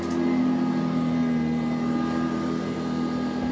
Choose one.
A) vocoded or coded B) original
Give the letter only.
B